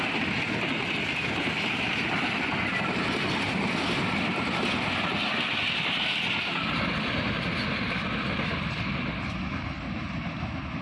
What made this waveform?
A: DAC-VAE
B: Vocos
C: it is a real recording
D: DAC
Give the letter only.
C